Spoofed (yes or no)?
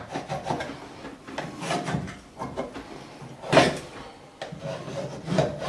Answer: no